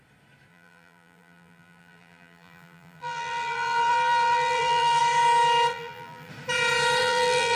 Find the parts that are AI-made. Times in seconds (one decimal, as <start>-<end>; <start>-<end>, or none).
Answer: 0.5-5.0; 5.7-6.3; 7.0-7.6